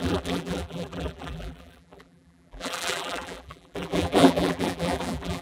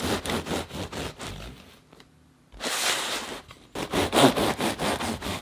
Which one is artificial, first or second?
first